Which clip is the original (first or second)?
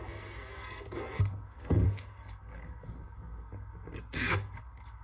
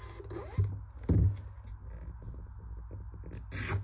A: second